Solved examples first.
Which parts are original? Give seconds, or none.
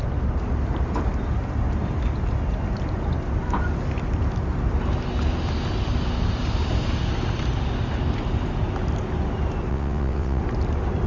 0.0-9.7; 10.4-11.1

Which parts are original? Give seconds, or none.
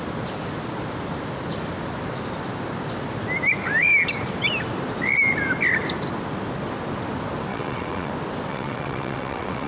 0.0-7.5; 8.1-8.5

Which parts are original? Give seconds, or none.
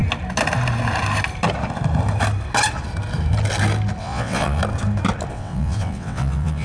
0.0-4.0; 4.6-5.3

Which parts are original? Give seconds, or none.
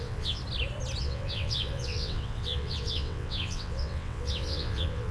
0.4-1.0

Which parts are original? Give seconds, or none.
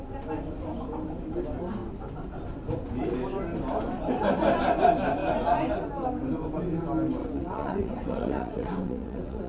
0.0-7.2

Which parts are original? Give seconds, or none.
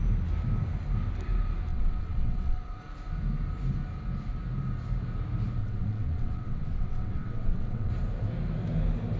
0.0-1.7; 2.8-5.6; 7.9-9.2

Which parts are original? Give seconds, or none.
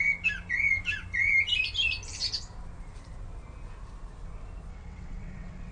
0.0-4.7